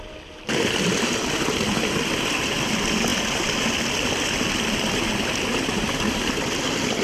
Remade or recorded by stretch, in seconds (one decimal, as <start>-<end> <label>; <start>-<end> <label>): 0.0-7.0 recorded